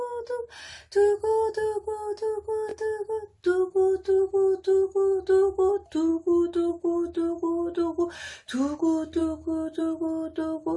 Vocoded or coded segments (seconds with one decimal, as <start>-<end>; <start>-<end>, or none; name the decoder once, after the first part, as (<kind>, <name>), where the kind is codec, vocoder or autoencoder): 6.1-6.7 (autoencoder, DAC-VAE)